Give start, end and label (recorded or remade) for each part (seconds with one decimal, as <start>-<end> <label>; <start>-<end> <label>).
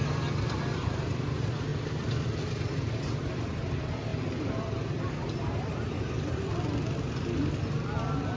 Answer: 0.0-8.4 recorded